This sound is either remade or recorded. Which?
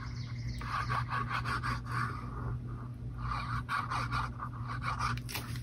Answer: recorded